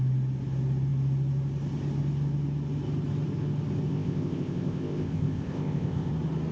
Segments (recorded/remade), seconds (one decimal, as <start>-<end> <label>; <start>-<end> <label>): 0.0-3.9 recorded; 3.9-6.1 remade; 6.1-6.5 recorded